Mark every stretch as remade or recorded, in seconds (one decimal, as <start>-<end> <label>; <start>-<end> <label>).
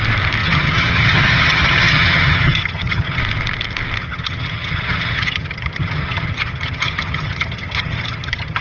0.0-0.4 recorded; 0.4-3.2 remade; 3.2-4.0 recorded; 4.0-8.6 remade